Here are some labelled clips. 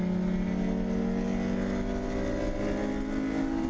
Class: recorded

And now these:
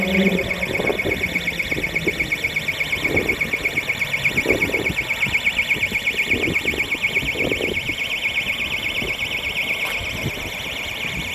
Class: recorded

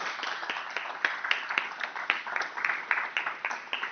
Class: recorded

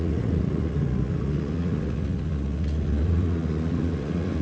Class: remade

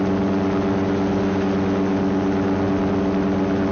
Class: recorded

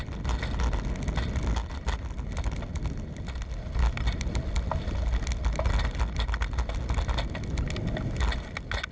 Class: recorded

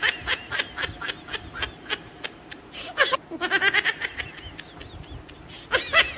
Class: recorded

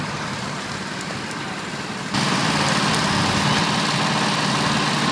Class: recorded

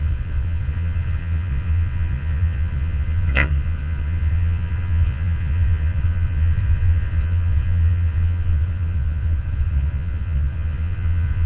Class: remade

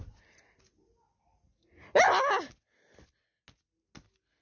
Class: recorded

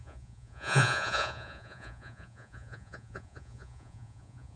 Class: remade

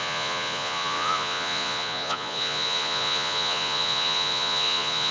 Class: remade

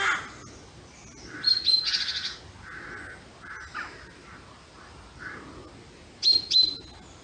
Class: recorded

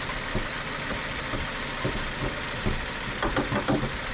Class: recorded